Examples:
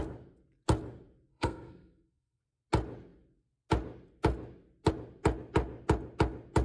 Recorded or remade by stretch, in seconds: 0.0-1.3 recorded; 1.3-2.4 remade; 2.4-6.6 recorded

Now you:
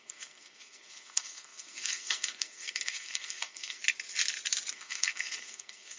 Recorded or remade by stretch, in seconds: 0.0-3.8 remade; 3.8-4.7 recorded; 4.7-6.0 remade

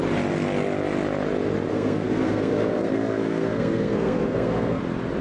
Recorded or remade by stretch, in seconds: 0.0-1.7 recorded; 1.7-4.8 remade; 4.8-5.2 recorded

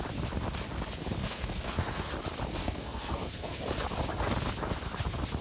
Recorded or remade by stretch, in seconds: 0.0-1.2 recorded; 1.2-2.1 remade; 2.1-2.6 recorded; 2.6-3.6 remade; 3.6-5.4 recorded

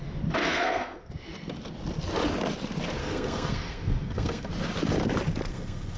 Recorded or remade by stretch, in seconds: 0.0-0.4 recorded; 0.4-1.1 remade; 1.1-3.0 recorded; 3.0-4.5 remade; 4.5-5.5 recorded; 5.5-6.0 remade

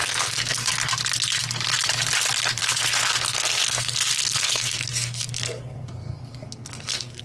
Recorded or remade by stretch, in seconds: 0.0-0.7 remade; 0.7-2.6 recorded; 2.6-7.2 remade

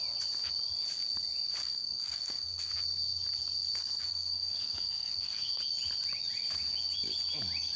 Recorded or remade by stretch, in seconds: 0.0-1.6 recorded; 1.6-2.7 remade; 2.7-3.8 recorded; 3.8-5.6 remade; 5.6-7.8 recorded

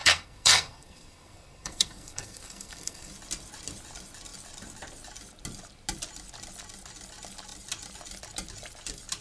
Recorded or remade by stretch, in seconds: 0.0-3.1 remade; 3.1-9.2 recorded